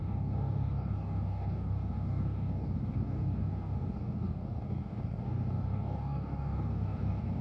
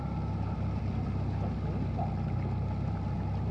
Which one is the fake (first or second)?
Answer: first